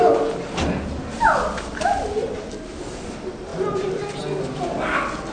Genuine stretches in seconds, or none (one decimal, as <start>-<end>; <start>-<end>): 0.0-5.3